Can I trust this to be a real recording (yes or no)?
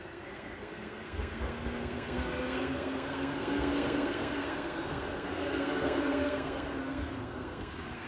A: no